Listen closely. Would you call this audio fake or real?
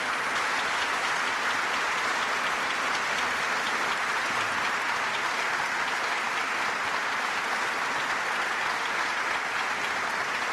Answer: real